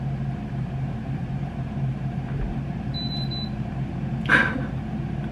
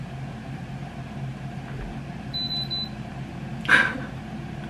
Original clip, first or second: second